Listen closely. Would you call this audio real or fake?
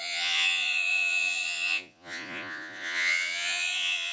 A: fake